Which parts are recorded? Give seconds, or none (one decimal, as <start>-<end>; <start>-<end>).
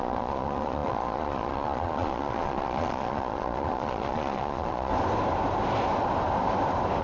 4.9-7.0